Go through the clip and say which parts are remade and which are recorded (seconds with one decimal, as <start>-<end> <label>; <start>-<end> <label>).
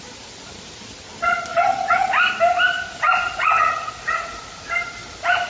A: 0.0-1.5 recorded; 1.5-2.1 remade; 2.1-3.4 recorded; 3.4-3.9 remade; 3.9-5.5 recorded